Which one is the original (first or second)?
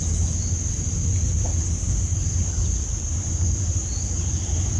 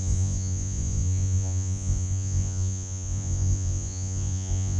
first